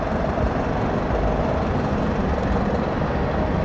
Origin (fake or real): real